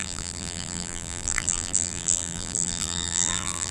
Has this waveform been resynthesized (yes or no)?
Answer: yes